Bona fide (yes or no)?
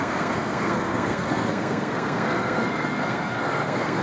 no